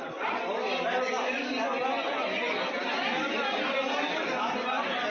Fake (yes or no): no